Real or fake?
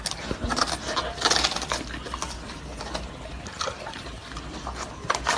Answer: real